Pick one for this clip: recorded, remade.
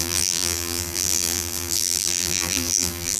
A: remade